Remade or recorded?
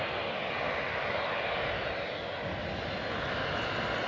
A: recorded